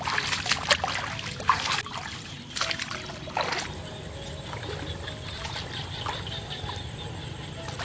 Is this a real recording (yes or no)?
yes